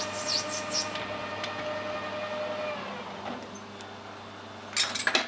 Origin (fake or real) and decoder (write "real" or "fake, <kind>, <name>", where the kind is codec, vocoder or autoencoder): real